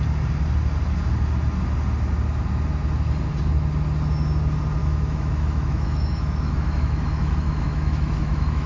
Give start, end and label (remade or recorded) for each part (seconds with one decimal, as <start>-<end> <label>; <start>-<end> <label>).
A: 0.0-4.8 recorded; 4.8-8.7 remade